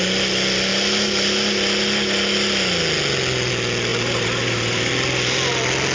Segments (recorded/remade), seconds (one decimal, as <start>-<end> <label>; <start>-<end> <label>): 0.0-3.9 recorded; 3.9-4.9 remade; 4.9-5.9 recorded